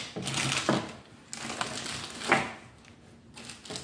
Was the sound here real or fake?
real